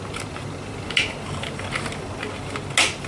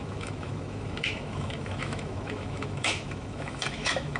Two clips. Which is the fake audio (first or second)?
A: second